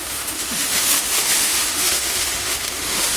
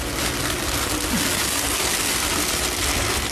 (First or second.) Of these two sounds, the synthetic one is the first